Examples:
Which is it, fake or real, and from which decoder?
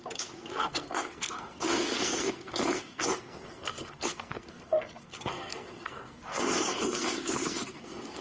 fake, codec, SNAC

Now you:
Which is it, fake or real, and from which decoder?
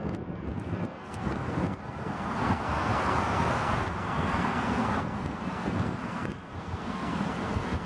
fake, codec, SNAC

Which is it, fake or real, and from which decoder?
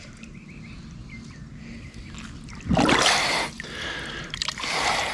real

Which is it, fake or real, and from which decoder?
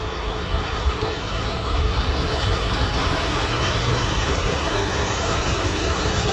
fake, codec, SNAC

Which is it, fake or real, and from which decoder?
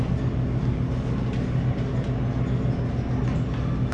real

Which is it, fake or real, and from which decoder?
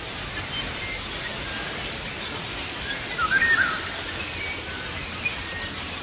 real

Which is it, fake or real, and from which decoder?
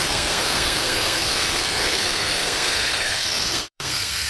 fake, codec, SNAC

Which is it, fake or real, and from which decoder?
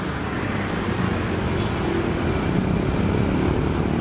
real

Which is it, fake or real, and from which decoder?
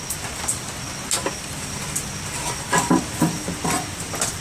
real